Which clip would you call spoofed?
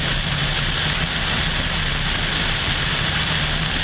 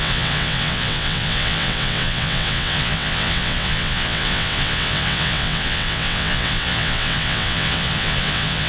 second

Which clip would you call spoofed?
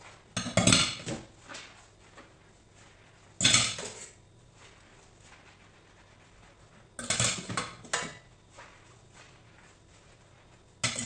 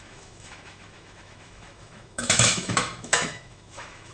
second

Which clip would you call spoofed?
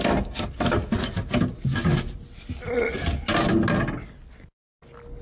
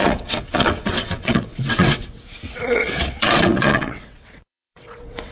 second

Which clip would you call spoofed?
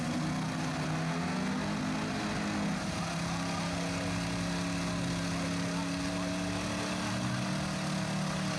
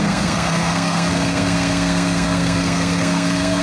second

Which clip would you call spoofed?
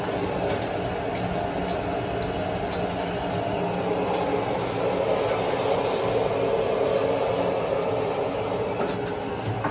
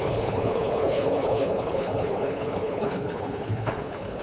second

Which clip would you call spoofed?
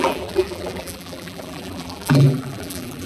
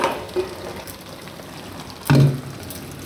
first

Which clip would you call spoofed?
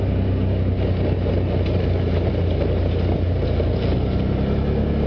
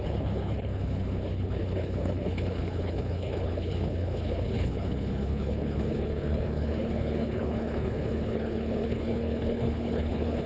second